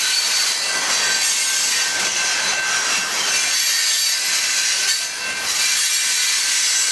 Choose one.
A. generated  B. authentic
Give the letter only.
B